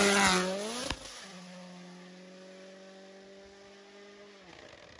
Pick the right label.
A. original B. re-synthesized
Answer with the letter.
A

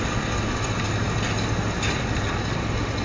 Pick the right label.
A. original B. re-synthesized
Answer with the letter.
A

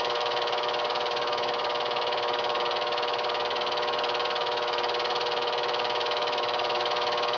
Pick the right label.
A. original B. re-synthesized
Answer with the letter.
B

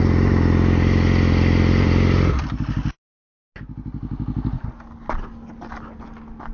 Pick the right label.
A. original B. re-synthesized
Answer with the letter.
A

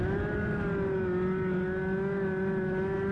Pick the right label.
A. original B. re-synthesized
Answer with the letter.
A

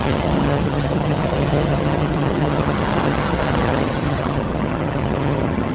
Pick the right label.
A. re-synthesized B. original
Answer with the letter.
A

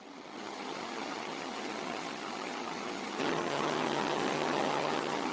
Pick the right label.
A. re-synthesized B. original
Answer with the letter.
A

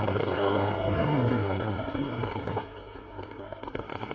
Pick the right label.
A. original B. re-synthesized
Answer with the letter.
B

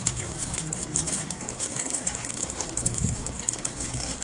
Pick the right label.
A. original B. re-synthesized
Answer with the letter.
B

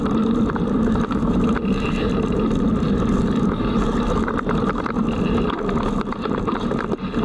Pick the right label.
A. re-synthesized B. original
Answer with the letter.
A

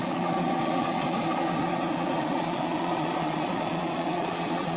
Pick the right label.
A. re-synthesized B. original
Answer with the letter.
A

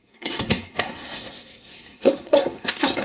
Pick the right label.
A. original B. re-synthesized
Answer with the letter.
B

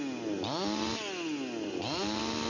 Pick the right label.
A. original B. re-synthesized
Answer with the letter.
A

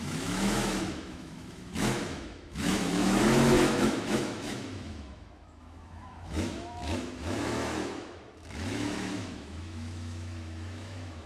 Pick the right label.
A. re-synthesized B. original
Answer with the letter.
A